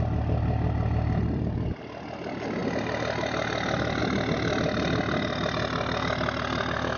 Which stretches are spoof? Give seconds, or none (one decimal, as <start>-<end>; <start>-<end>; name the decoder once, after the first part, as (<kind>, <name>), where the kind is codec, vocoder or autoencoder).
none